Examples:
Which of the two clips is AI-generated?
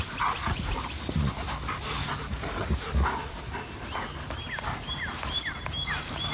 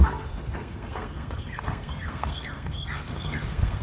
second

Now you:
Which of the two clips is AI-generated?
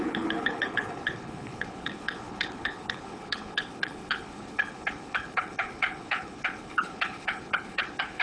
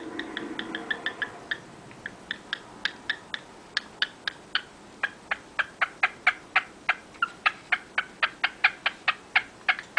first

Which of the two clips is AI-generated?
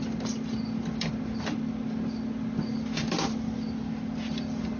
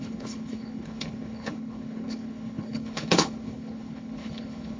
second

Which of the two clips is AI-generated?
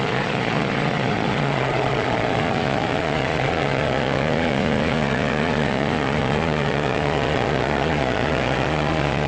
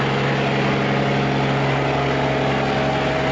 first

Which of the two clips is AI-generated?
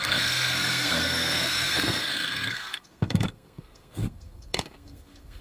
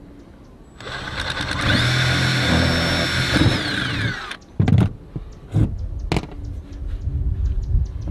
first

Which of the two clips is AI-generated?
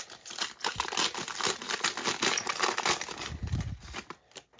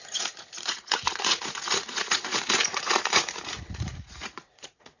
second